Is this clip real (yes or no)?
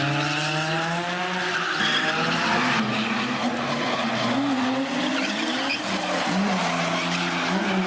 yes